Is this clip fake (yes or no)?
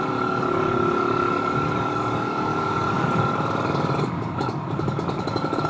yes